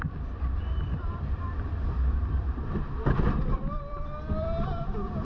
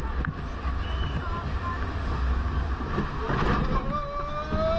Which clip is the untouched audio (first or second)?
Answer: second